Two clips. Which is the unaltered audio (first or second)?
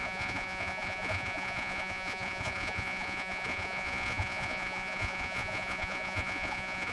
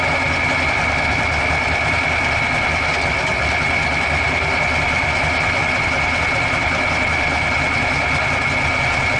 second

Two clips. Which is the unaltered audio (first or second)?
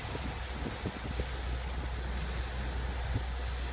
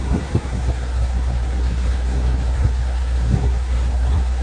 first